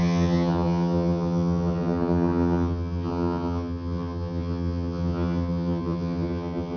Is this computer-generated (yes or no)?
yes